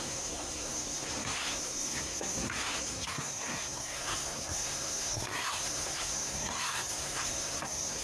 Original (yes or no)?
no